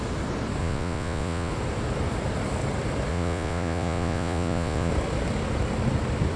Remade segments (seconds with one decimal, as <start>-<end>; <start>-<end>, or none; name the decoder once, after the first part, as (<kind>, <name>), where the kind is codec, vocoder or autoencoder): 0.6-1.5 (vocoder, Vocos); 3.1-4.9